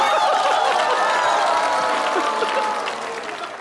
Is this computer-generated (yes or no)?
no